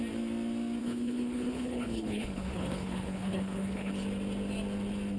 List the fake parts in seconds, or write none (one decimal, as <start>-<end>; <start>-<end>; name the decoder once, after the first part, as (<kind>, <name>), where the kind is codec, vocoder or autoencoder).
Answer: 0.8-3.9 (codec, HILCodec)